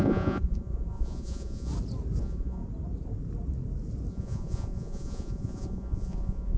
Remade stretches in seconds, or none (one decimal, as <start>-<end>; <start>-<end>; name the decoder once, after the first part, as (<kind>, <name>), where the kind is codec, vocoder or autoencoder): 0.0-1.7 (vocoder, Vocos); 2.2-2.6; 4.1-6.6